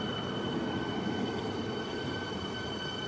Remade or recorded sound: recorded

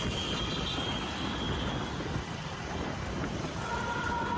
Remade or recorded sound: recorded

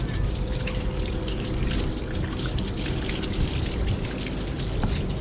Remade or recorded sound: recorded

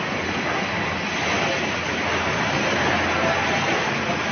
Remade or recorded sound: recorded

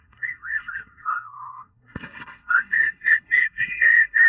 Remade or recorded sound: remade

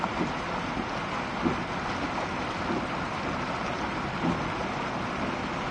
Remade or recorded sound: recorded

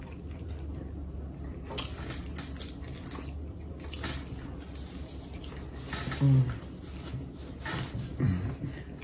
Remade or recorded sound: recorded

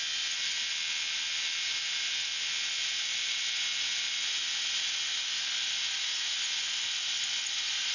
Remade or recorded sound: recorded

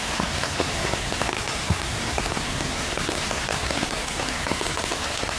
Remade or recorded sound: remade